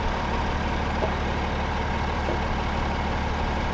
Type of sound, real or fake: real